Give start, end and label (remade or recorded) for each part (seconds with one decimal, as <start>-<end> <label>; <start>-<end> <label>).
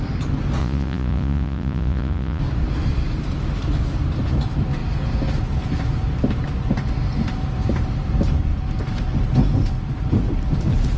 0.0-0.6 recorded; 0.6-2.4 remade; 2.4-11.0 recorded